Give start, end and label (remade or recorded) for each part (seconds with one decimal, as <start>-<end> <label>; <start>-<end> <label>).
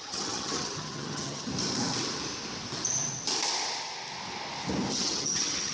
0.0-1.5 remade; 1.5-4.9 recorded; 4.9-5.7 remade